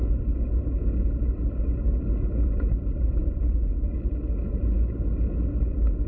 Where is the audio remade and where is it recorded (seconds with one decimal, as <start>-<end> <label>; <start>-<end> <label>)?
0.0-6.1 recorded